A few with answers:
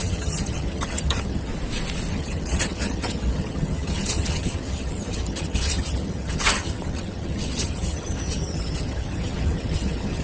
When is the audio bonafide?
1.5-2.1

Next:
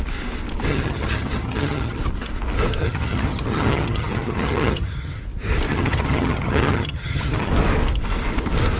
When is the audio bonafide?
0.0-0.7; 2.0-2.8; 5.2-5.7; 7.5-8.8

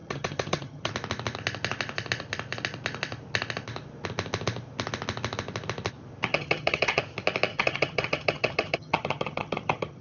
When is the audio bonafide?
0.9-6.3; 7.0-7.5

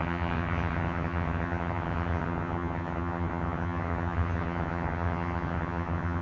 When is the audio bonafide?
none